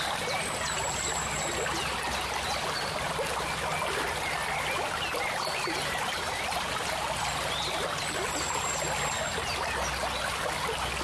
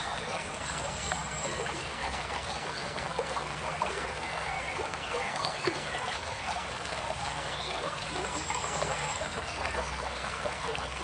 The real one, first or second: first